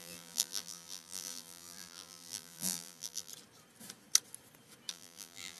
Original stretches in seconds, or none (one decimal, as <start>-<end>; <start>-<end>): 3.3-4.9

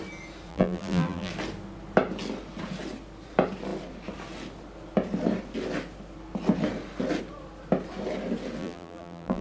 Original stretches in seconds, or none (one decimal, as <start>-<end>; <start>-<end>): 0.0-0.5; 1.3-8.6

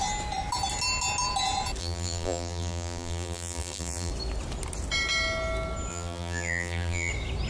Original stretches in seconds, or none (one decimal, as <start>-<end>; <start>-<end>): 0.0-1.8; 4.1-5.9; 7.1-7.5

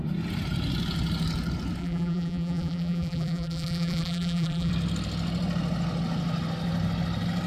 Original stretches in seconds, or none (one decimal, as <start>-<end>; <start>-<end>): 0.0-1.8; 4.7-7.5